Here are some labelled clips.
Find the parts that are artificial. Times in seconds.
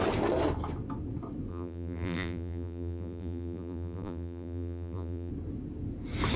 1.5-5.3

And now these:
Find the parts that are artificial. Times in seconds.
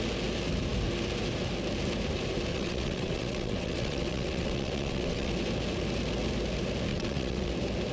2.5-5.3; 6.9-7.5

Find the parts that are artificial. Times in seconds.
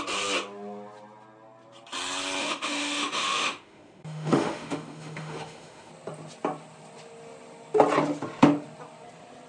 2.4-5.9